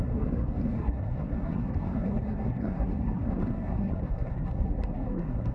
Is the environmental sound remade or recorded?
remade